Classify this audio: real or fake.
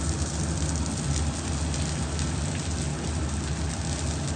real